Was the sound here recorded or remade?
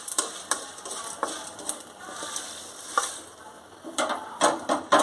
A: remade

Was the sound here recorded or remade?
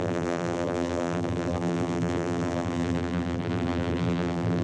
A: remade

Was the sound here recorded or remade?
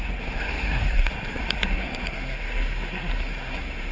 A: remade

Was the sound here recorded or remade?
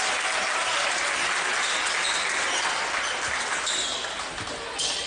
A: recorded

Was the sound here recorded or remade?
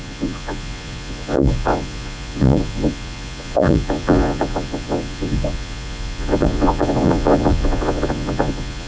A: remade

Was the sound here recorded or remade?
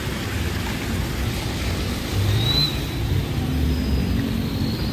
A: recorded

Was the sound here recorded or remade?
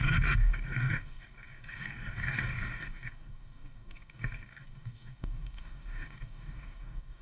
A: remade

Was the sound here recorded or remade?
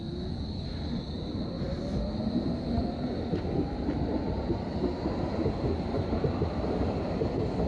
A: recorded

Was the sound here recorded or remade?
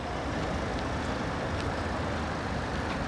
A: recorded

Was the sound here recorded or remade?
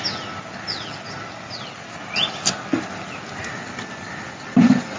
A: recorded